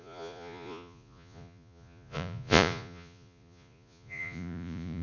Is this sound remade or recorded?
remade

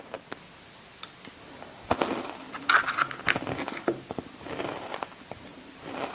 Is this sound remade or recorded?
recorded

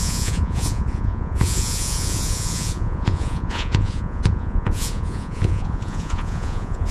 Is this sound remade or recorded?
remade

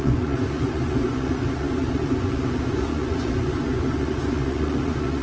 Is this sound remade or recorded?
remade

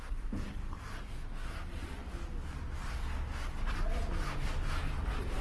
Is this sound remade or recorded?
recorded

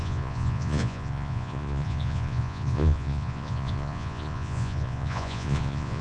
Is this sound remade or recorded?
remade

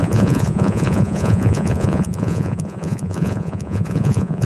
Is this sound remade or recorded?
remade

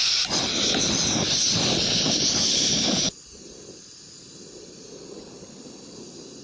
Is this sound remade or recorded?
recorded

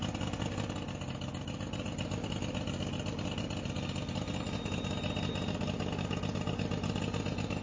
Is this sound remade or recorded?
recorded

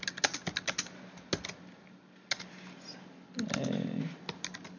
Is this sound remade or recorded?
recorded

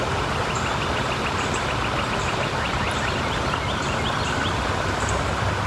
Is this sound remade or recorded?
recorded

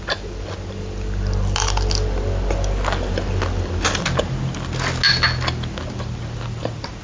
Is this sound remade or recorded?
recorded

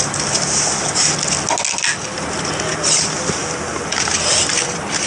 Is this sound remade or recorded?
recorded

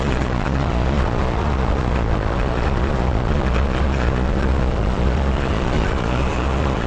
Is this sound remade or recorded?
remade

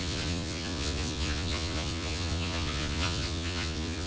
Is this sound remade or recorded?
remade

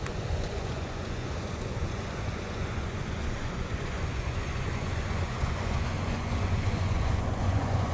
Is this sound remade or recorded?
remade